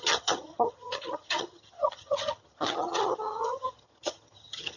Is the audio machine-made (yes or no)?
yes